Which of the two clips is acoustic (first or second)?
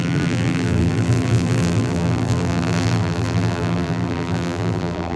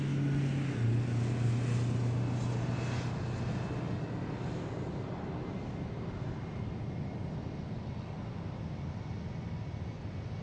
second